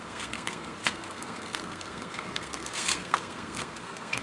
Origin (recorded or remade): remade